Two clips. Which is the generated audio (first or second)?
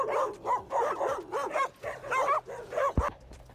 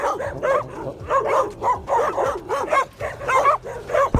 second